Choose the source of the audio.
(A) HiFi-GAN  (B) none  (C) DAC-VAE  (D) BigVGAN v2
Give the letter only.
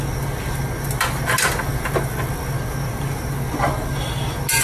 B